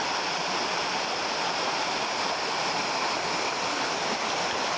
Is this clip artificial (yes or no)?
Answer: no